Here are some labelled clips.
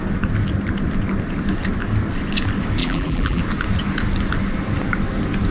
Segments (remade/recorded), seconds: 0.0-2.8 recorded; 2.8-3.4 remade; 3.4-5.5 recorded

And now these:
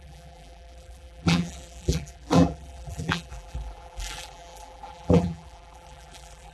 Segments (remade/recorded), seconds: 0.0-6.5 remade

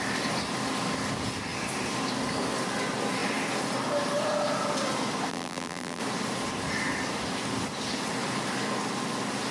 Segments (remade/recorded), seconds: 0.0-5.3 recorded; 5.3-6.0 remade; 6.0-9.5 recorded

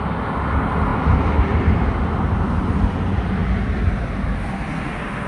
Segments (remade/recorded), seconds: 0.0-5.3 recorded

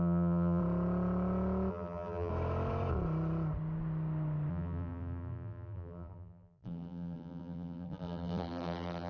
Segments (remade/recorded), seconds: 0.0-0.6 remade; 0.6-1.7 recorded; 1.7-2.3 remade; 2.3-4.5 recorded; 4.5-9.1 remade

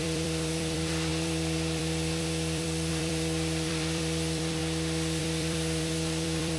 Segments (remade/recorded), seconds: 0.0-4.6 remade; 4.6-5.2 recorded; 5.2-6.6 remade